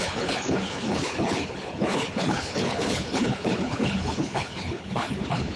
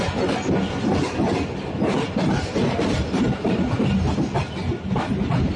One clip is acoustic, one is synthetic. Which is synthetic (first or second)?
first